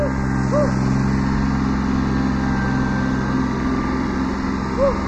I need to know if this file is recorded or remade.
recorded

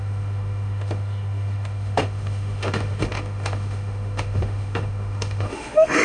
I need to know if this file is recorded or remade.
remade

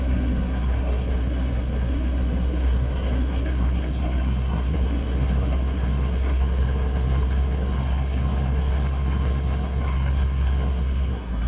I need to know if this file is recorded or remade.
remade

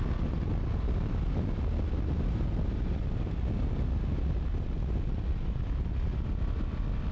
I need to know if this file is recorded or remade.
recorded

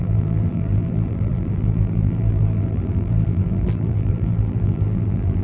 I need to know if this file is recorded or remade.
remade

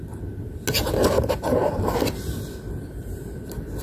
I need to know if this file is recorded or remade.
recorded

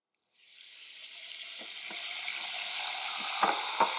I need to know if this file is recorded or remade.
recorded